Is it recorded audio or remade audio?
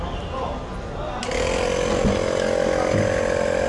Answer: recorded